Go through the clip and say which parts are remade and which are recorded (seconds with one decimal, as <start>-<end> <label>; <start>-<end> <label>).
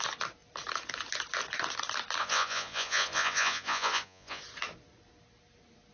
0.0-2.2 recorded; 2.2-4.4 remade; 4.4-5.9 recorded